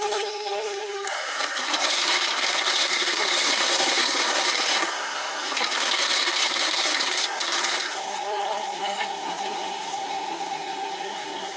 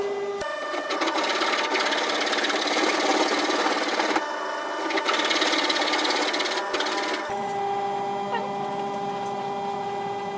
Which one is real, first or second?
second